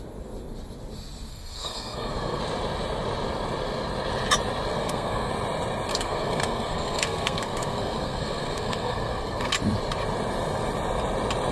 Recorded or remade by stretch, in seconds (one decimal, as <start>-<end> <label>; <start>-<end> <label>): 0.0-1.3 recorded; 1.3-2.4 remade; 2.4-4.7 recorded; 4.7-5.3 remade; 5.3-5.9 recorded; 5.9-9.5 remade; 9.5-11.5 recorded